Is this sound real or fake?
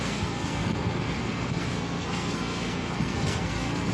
fake